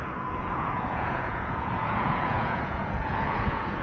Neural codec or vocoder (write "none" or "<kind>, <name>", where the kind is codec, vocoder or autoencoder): vocoder, Vocos